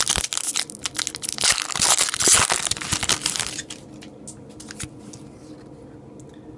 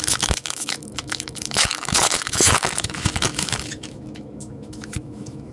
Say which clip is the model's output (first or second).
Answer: second